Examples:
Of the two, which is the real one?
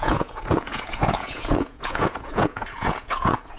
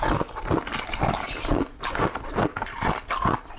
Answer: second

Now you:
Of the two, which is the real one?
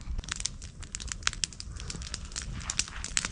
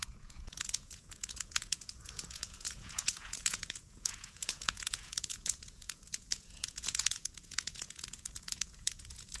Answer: first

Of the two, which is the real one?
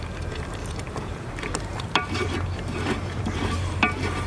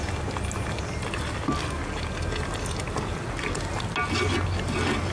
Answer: second